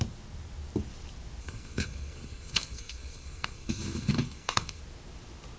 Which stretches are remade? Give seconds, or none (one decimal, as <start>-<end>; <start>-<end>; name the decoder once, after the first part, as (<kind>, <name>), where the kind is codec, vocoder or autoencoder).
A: 1.4-4.8 (codec, SNAC)